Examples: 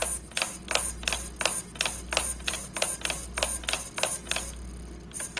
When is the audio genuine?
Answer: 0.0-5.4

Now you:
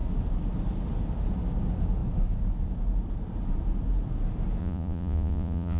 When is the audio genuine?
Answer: 0.0-4.6

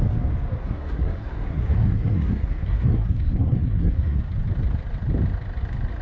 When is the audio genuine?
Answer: 0.0-0.6; 4.2-6.0

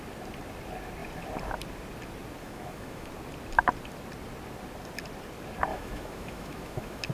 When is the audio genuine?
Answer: 0.0-2.4; 3.1-5.7

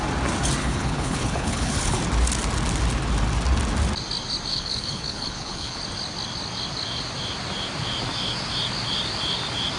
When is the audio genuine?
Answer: 0.0-0.6; 2.0-4.5; 5.8-9.8

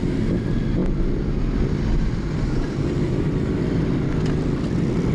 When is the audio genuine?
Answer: 0.0-5.1